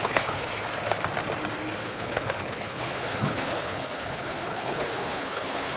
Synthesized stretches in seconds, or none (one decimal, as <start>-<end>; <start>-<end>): 0.0-0.5; 1.8-5.8